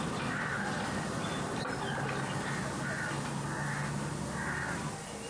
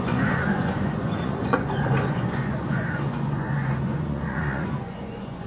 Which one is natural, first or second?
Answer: first